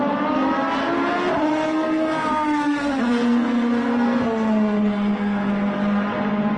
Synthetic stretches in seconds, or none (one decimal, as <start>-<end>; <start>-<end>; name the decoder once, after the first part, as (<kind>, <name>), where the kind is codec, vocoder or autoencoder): 1.5-5.5 (codec, SNAC)

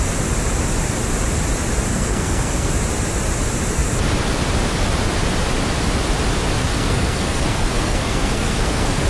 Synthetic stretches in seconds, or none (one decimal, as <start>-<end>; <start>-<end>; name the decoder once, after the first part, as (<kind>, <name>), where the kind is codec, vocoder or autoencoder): 1.9-2.7 (codec, SNAC); 6.6-9.1

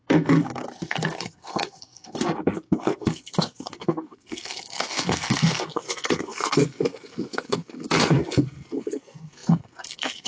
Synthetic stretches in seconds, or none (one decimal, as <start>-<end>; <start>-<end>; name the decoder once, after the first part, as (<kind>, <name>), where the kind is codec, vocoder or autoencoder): 0.0-10.3 (codec, SNAC)

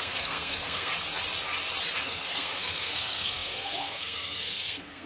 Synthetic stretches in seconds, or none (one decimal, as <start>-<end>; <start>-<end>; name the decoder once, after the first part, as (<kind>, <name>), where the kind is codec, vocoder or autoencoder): 0.0-0.9 (codec, SNAC); 2.0-5.1

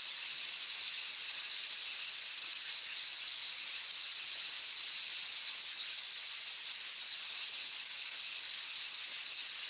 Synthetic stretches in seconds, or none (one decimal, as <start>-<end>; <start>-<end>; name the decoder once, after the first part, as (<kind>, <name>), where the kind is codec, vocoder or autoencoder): none